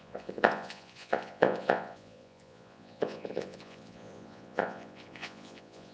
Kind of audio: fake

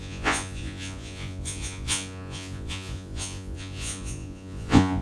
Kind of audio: fake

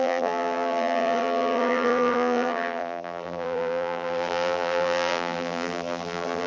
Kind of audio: fake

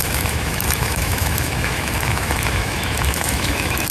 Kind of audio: fake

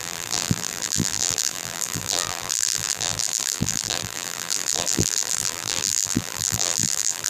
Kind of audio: fake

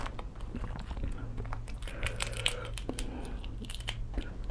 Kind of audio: real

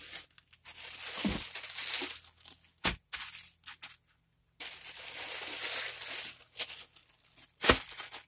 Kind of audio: real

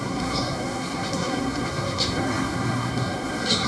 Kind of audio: fake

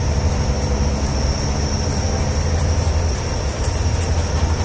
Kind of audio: real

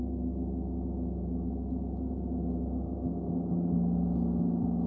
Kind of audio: real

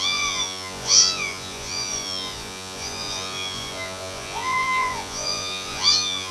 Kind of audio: fake